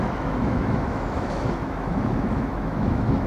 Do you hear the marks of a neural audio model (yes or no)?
yes